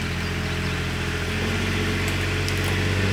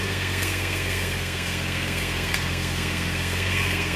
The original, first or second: first